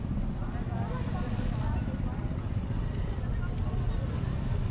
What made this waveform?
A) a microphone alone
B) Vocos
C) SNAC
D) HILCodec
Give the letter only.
A